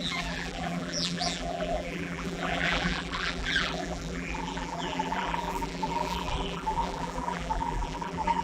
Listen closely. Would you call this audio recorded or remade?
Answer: remade